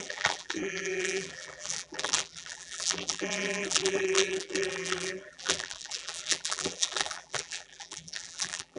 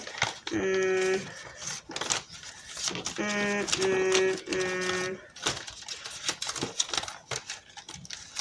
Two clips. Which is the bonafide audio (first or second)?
second